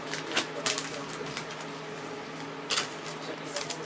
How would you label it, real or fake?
real